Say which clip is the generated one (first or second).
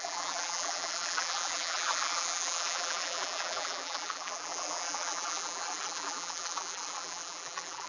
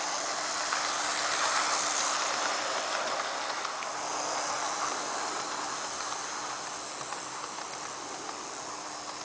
first